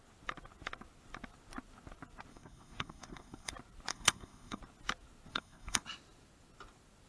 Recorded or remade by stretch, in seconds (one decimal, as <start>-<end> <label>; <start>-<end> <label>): 0.0-2.3 recorded; 2.3-3.5 remade; 3.5-3.9 recorded; 3.9-4.6 remade; 4.6-5.3 recorded; 5.3-5.8 remade; 5.8-7.1 recorded